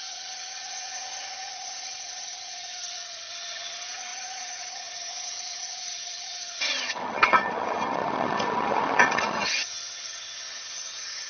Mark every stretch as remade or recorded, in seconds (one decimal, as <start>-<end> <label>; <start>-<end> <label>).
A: 0.0-11.3 remade